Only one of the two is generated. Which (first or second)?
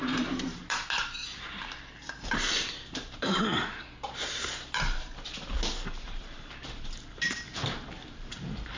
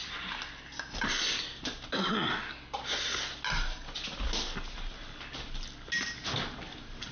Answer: first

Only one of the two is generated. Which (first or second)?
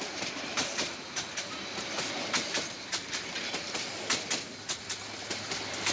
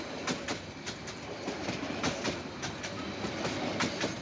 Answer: first